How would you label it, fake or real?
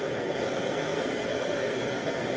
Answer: fake